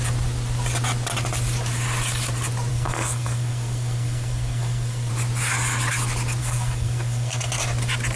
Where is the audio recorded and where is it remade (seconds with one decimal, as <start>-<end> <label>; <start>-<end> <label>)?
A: 0.0-2.7 recorded; 2.7-5.1 remade; 5.1-6.4 recorded; 6.4-7.6 remade; 7.6-8.2 recorded